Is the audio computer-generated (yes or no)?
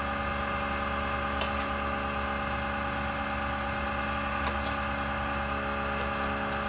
no